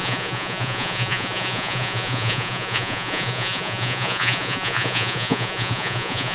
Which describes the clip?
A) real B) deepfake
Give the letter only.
B